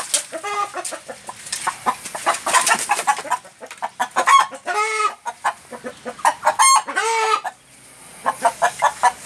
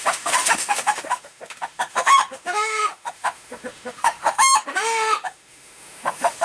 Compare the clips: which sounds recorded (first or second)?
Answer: first